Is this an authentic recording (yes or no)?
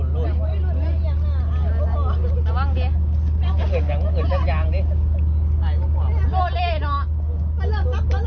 yes